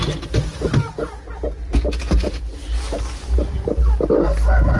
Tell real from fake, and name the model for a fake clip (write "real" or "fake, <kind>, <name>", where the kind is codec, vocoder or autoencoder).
real